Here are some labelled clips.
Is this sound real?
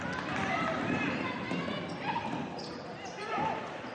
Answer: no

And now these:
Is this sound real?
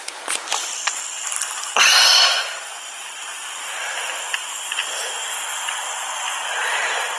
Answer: yes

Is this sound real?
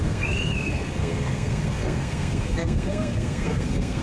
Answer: no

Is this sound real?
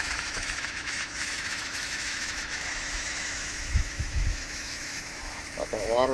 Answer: no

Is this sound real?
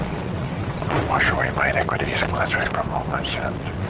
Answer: no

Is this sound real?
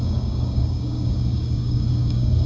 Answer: no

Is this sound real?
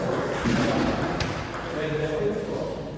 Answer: yes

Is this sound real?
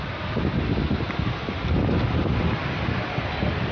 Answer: yes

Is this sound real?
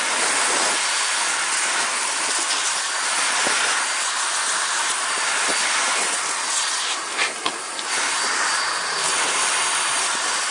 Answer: yes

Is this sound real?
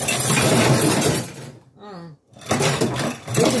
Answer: no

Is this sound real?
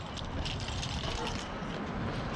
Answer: no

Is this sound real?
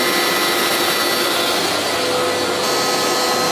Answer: yes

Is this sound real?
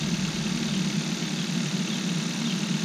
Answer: yes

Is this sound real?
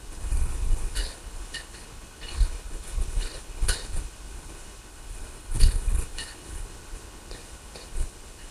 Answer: no